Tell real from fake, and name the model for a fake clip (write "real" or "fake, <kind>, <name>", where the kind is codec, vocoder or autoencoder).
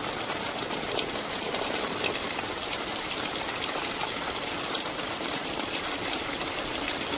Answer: real